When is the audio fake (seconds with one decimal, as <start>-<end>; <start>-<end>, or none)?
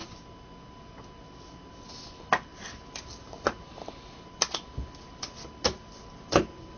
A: none